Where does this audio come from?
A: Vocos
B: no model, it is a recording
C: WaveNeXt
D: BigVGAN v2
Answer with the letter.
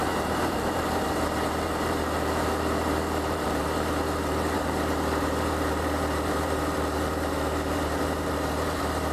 D